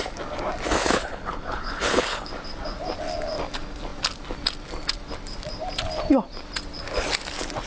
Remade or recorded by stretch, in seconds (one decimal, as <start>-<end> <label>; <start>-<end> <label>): 0.0-0.8 recorded; 0.8-2.3 remade; 2.3-7.7 recorded

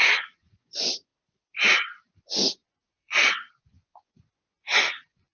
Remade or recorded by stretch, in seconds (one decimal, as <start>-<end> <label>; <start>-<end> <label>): 0.0-1.1 remade; 1.1-2.2 recorded; 2.2-5.3 remade

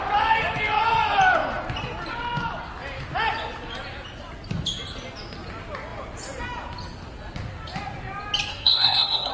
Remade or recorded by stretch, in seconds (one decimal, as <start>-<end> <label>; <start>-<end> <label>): 0.0-8.5 recorded; 8.5-9.3 remade

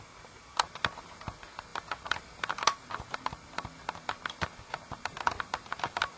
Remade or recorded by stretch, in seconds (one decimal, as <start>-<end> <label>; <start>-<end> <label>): 0.0-6.2 recorded

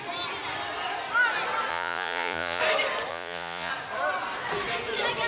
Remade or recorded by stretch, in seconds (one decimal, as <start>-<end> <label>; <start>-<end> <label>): 0.0-1.7 recorded; 1.7-2.6 remade; 2.6-3.1 recorded; 3.1-3.7 remade; 3.7-5.3 recorded

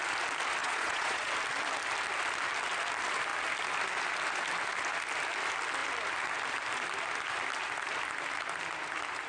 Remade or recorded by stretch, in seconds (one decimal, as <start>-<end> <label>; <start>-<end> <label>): 0.0-0.6 recorded; 0.6-1.3 remade; 1.3-9.3 recorded

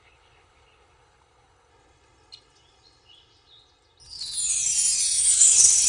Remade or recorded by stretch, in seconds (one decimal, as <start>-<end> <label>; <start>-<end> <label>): 0.0-1.7 remade; 1.7-5.2 recorded; 5.2-5.9 remade

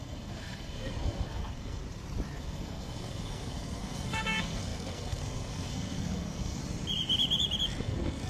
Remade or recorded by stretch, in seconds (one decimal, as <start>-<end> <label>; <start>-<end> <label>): 0.0-1.8 remade; 1.8-2.4 recorded; 2.4-6.6 remade; 6.6-7.8 recorded; 7.8-8.3 remade